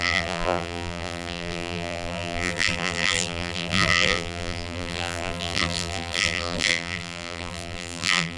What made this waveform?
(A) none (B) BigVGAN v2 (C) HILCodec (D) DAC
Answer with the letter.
B